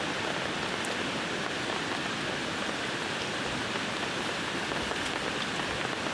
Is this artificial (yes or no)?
no